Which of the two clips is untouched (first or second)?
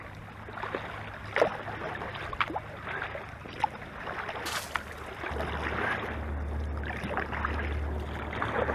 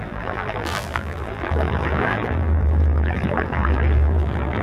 first